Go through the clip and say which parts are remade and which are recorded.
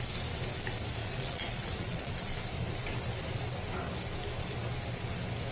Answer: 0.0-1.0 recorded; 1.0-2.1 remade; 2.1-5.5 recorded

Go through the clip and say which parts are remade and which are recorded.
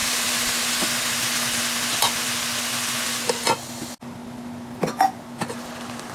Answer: 0.0-6.1 recorded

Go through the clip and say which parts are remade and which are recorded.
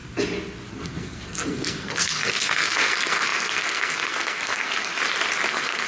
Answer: 0.0-0.7 recorded; 0.7-4.9 remade; 4.9-5.5 recorded; 5.5-5.9 remade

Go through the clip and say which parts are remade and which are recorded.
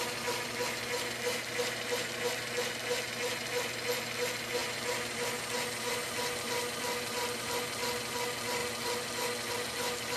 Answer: 0.0-10.2 recorded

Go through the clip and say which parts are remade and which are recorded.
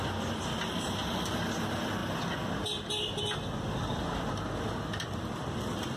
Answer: 0.0-6.0 recorded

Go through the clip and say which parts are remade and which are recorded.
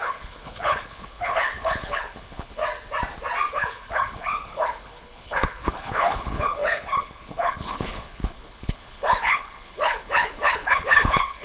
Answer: 0.0-2.6 remade; 2.6-3.5 recorded; 3.5-11.4 remade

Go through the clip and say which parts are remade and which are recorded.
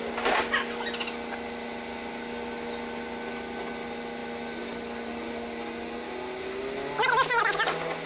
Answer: 0.0-8.1 recorded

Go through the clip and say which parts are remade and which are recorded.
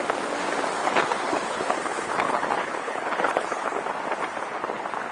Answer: 0.0-0.8 recorded; 0.8-3.9 remade; 3.9-5.1 recorded